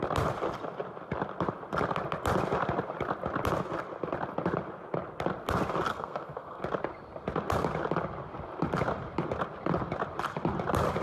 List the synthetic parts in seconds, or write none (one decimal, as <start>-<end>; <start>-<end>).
5.9-6.6